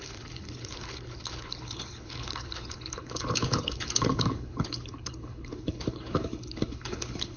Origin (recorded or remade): remade